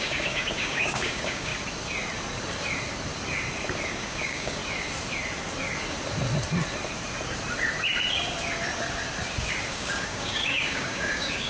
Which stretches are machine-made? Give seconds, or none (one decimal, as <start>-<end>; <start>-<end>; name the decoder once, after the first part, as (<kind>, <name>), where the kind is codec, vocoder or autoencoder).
0.0-1.5 (codec, DAC); 3.9-4.6; 9.7-11.5